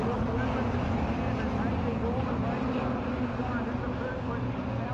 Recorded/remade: recorded